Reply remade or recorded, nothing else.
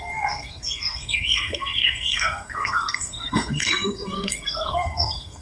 remade